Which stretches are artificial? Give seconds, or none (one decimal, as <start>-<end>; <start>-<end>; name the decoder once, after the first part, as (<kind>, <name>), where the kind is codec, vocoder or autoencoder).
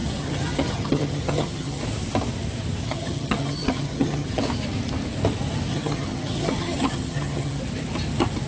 0.0-1.8 (vocoder, HiFi-GAN); 2.8-4.4; 5.7-7.6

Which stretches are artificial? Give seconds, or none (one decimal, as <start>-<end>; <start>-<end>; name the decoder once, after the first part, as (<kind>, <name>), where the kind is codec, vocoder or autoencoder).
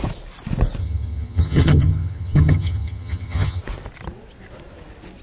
0.8-3.6 (vocoder, HiFi-GAN)